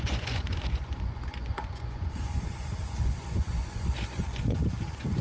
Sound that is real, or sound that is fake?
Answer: fake